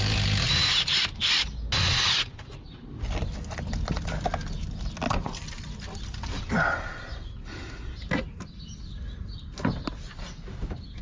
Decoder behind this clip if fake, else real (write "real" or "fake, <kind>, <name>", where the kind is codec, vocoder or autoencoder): real